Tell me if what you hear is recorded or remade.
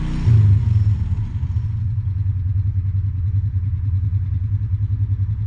recorded